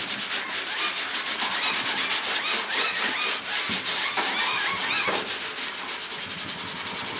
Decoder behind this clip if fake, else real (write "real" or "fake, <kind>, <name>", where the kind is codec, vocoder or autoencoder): real